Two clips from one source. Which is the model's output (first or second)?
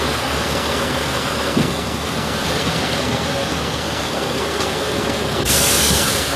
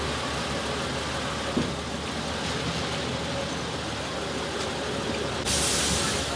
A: first